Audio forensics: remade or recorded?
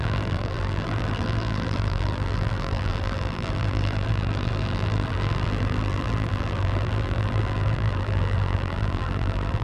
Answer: remade